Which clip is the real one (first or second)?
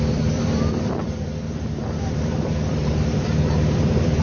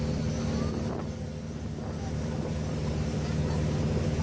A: second